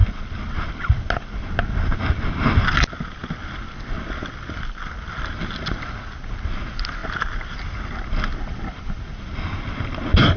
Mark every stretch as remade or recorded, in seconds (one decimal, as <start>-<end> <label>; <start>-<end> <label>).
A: 0.0-10.4 recorded